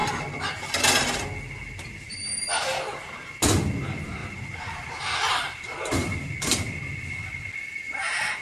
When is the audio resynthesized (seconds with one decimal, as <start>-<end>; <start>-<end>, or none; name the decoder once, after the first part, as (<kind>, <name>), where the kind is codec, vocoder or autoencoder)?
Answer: 4.2-6.3 (vocoder, BigVGAN v2)